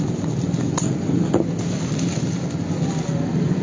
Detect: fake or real real